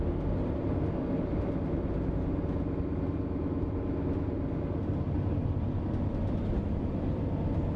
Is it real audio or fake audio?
real